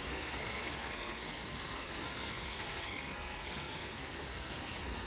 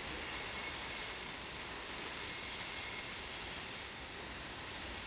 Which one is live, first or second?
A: second